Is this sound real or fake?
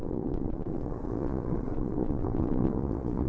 fake